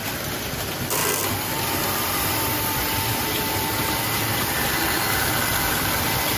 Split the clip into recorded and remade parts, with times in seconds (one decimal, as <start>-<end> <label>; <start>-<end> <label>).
0.0-3.2 recorded; 3.2-4.2 remade; 4.2-6.4 recorded